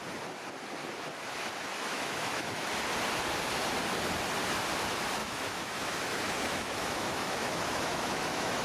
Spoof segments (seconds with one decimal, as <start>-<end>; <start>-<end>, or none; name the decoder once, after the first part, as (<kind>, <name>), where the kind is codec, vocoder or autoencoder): 1.7-2.7 (autoencoder, DAC-VAE); 5.2-8.6